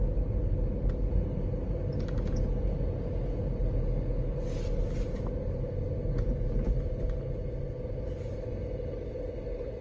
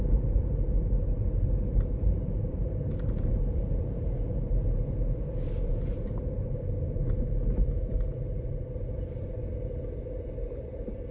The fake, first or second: second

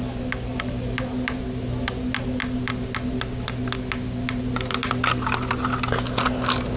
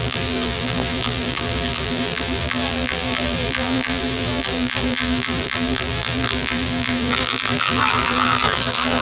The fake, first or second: second